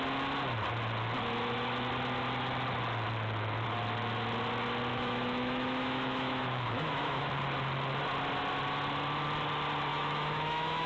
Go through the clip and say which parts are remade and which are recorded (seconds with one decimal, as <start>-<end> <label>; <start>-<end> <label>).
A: 0.0-4.9 recorded; 4.9-7.3 remade; 7.3-9.9 recorded; 9.9-10.9 remade